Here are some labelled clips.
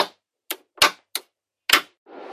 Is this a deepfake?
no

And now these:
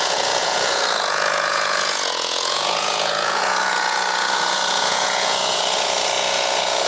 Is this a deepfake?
yes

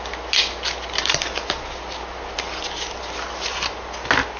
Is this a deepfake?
no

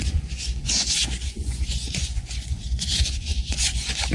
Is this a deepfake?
yes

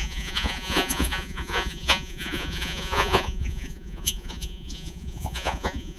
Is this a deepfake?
yes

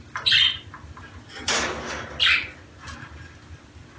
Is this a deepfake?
no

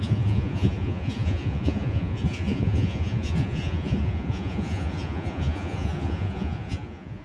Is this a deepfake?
yes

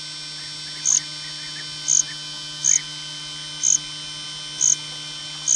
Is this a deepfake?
no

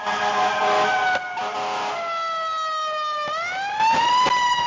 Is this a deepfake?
no